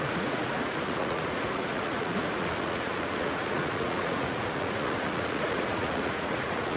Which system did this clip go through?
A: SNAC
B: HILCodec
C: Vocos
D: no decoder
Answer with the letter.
C